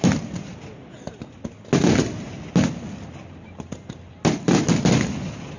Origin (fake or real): real